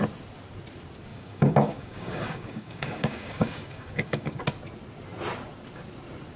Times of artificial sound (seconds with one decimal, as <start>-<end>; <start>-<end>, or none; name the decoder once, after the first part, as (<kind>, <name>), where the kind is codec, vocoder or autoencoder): 1.1-4.4 (codec, DAC)